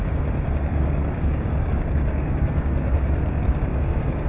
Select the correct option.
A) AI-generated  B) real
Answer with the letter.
A